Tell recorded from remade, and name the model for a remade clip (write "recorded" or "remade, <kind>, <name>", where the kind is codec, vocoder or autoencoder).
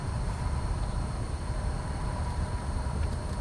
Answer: remade, vocoder, BigVGAN v2